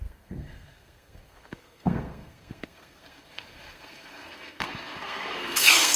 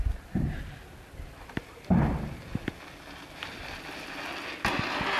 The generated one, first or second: first